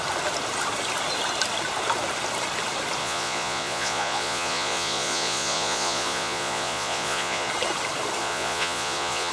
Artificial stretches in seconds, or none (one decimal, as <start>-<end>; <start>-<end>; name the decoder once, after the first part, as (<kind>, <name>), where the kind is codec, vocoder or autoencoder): 3.0-7.5 (vocoder, Vocos); 8.2-9.3